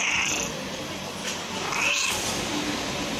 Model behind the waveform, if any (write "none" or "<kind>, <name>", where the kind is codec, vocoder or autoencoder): none